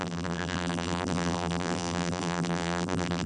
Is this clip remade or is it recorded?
remade